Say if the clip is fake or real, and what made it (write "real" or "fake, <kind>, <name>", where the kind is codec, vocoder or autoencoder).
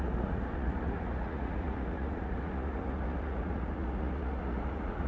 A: fake, vocoder, Vocos